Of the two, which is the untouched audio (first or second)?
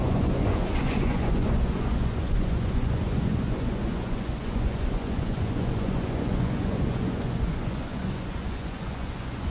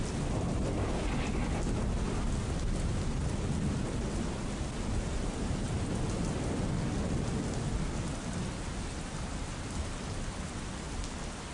second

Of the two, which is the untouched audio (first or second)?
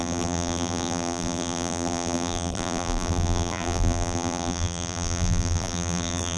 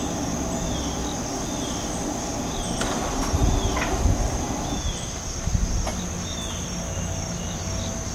second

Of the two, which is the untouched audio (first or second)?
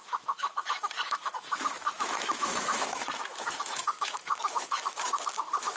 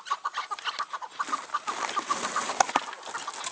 second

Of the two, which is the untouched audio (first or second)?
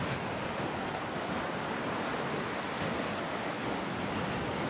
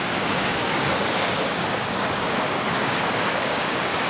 first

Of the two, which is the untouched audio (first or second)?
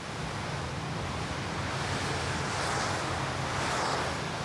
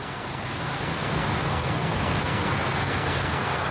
first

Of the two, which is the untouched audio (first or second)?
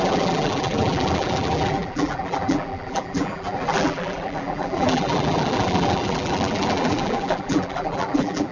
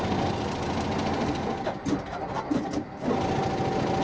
second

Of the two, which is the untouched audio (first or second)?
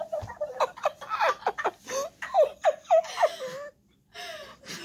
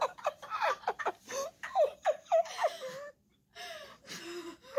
first